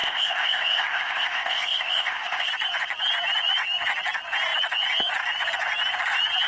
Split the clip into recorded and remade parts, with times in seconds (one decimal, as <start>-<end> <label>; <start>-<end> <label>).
0.0-2.5 remade; 2.5-6.5 recorded